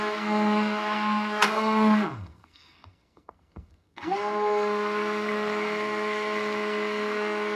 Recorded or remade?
remade